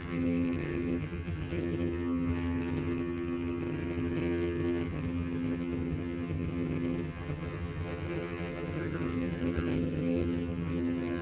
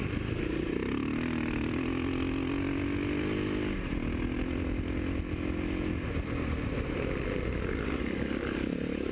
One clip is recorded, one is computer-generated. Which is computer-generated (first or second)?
first